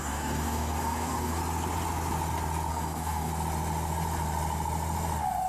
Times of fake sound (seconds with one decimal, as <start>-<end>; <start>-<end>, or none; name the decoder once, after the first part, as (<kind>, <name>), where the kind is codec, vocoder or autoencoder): 0.0-1.4 (codec, DAC); 2.7-3.3